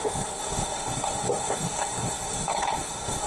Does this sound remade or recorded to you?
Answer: remade